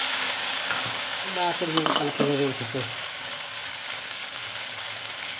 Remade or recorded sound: remade